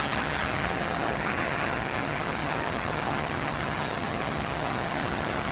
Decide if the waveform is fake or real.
fake